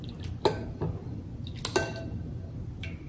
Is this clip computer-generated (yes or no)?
no